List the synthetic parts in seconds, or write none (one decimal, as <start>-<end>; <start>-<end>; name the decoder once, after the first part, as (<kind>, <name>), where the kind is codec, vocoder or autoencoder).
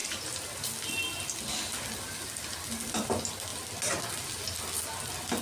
none